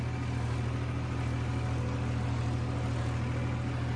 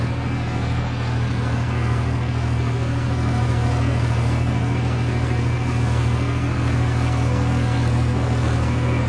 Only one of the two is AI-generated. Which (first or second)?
second